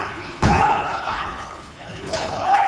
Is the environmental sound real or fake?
fake